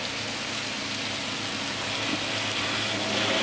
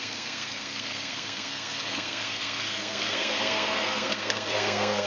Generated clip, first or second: second